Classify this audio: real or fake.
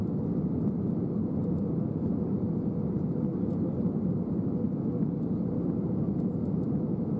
real